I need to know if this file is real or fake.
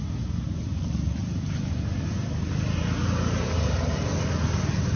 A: real